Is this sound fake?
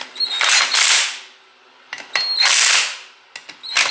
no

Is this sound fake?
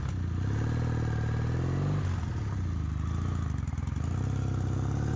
no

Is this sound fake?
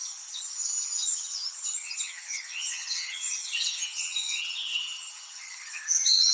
yes